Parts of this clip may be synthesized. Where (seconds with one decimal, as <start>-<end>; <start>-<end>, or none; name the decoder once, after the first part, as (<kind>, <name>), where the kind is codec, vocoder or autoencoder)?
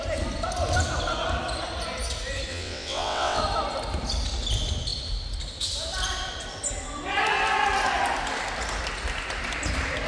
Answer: 2.5-3.4 (vocoder, WaveNeXt)